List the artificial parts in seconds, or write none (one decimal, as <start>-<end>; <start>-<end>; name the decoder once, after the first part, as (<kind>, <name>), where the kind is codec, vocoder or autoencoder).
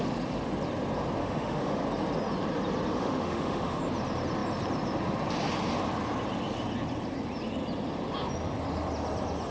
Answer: 1.2-1.8 (autoencoder, DAC-VAE); 2.9-3.8